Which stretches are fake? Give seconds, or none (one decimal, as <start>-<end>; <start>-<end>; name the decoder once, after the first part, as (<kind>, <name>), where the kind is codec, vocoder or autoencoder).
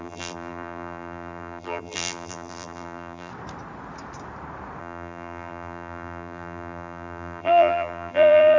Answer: 0.0-3.3 (vocoder, BigVGAN v2); 4.8-8.6